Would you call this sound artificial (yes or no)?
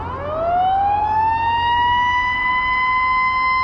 no